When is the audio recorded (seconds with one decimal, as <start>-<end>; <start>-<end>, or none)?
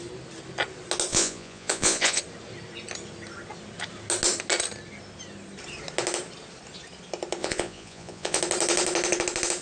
0.0-1.1; 2.2-7.4; 8.4-9.6